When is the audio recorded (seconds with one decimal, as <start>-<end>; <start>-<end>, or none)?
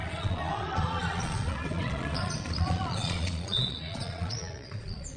none